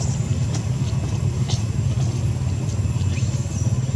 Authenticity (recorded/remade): recorded